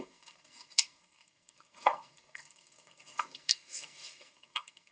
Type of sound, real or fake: fake